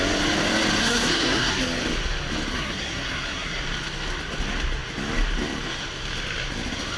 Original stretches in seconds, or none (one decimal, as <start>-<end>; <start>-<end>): 0.0-0.8; 1.5-2.5; 3.6-7.0